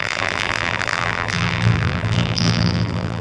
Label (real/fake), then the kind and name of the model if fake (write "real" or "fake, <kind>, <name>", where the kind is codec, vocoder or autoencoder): fake, vocoder, BigVGAN v2